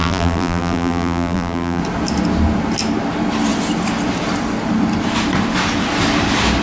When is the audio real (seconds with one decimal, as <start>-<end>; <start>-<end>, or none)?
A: 1.8-6.6